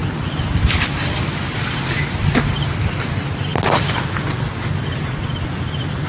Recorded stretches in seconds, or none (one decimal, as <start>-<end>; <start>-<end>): 0.0-6.1